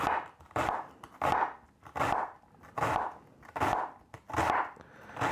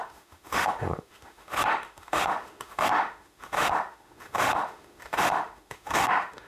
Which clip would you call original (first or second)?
first